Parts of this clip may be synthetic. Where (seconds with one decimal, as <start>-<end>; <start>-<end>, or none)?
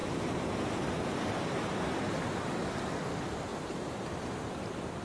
0.0-1.9; 3.5-5.0